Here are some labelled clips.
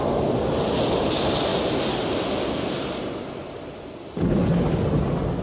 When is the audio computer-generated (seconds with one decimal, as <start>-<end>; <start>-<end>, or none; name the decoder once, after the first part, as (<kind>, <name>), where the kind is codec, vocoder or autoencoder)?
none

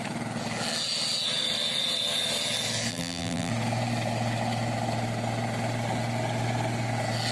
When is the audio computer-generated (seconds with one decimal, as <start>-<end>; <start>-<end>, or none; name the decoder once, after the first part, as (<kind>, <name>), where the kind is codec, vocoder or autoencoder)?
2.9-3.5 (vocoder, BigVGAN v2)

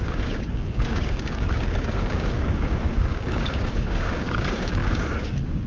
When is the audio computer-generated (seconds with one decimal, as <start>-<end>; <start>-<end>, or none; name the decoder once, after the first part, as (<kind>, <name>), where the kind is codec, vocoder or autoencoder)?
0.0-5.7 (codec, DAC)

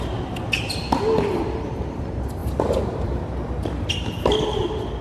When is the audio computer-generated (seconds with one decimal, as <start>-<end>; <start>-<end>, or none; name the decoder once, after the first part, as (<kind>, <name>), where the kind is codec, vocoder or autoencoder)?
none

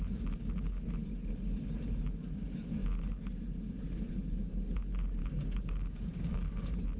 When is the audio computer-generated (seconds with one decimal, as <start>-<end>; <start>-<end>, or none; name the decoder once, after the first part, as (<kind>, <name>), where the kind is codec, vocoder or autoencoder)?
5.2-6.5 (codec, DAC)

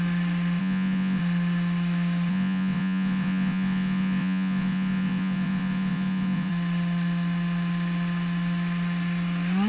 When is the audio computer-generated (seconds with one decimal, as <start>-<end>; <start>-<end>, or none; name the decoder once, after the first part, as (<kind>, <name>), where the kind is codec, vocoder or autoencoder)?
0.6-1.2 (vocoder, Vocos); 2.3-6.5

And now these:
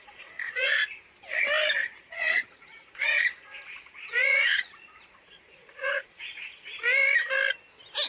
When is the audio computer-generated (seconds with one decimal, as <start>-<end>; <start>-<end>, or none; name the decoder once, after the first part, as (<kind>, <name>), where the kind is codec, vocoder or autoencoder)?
0.0-0.8 (vocoder, Vocos); 2.0-6.7